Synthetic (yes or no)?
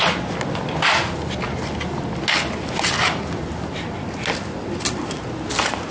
no